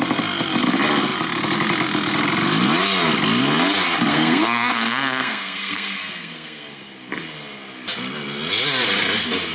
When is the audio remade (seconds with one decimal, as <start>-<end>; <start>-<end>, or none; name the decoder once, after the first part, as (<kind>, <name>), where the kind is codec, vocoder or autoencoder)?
4.1-6.8 (codec, SNAC)